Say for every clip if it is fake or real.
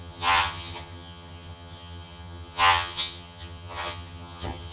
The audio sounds fake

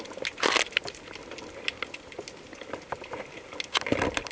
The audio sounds real